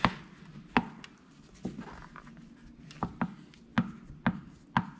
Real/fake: real